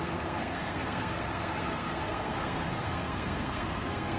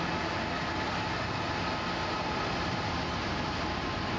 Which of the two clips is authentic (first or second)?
second